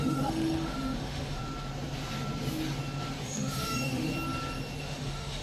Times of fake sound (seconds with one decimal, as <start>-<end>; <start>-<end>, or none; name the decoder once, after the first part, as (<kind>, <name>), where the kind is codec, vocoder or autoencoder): 0.0-1.4 (autoencoder, DAC-VAE); 3.2-4.1; 4.8-5.4